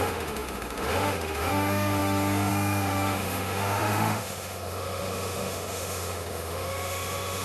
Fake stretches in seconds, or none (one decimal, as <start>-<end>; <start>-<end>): 0.0-7.4